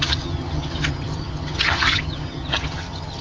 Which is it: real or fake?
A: fake